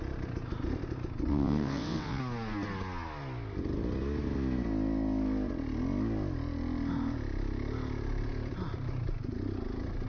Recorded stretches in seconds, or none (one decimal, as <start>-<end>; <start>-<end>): 0.0-1.3; 2.2-10.1